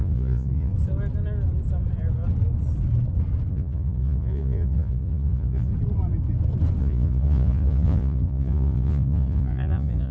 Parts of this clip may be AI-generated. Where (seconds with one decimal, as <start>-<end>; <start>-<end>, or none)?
0.0-0.7; 3.5-5.7; 6.8-10.1